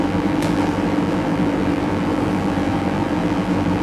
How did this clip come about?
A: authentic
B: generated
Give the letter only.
B